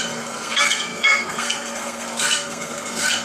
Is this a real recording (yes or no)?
no